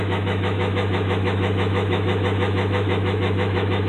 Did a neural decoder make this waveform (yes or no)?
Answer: yes